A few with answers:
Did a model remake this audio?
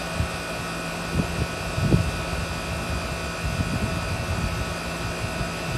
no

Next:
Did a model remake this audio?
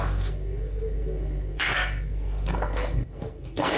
yes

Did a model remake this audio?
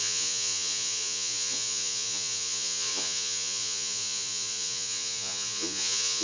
yes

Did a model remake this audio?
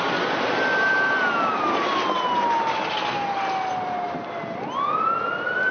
no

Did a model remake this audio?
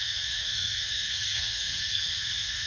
yes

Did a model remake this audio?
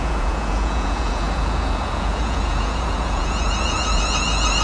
yes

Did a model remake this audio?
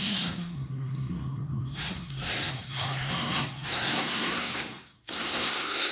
yes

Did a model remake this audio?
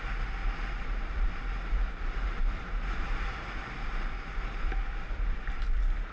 yes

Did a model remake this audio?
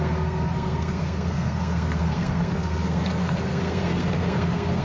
yes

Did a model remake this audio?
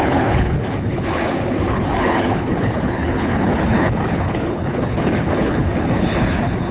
yes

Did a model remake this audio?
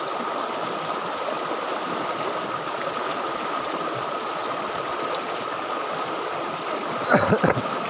no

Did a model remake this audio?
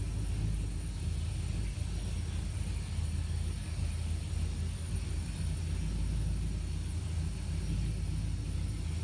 no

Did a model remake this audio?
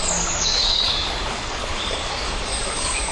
yes